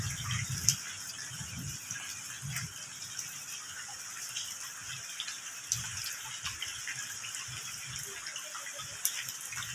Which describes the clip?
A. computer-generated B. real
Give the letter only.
B